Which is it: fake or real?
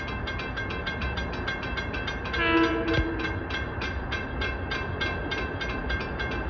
real